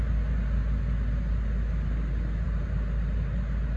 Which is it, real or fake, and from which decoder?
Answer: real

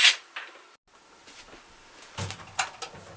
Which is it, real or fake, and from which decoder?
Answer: real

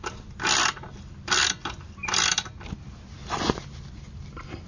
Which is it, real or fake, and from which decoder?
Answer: real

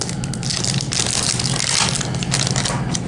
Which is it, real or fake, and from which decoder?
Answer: real